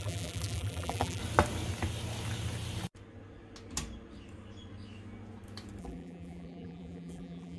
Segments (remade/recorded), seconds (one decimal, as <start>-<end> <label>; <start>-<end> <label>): 0.0-1.2 remade; 1.2-5.8 recorded; 5.8-7.6 remade